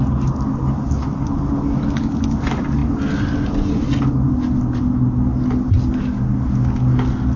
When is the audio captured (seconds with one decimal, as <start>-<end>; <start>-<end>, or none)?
0.0-7.4